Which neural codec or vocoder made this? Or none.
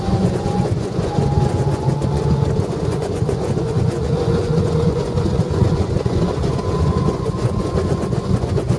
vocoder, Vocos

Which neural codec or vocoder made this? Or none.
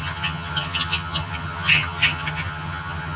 vocoder, HiFi-GAN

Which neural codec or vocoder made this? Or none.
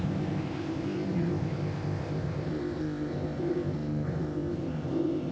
codec, ZipCodec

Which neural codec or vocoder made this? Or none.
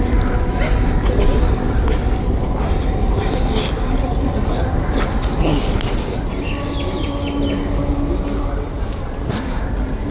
none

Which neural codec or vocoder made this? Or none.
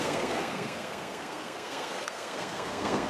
codec, SNAC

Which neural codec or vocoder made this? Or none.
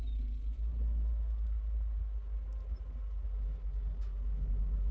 none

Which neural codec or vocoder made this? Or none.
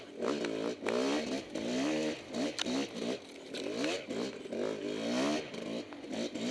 none